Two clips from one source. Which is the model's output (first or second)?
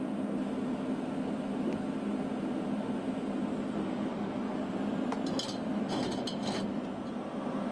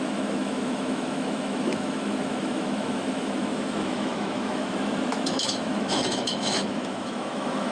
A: second